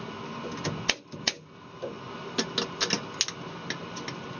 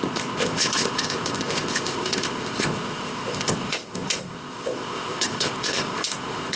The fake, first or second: second